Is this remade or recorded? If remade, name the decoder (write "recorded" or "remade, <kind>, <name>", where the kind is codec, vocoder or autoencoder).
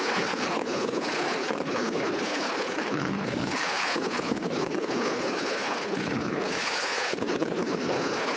remade, codec, HILCodec